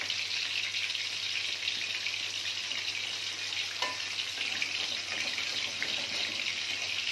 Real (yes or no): yes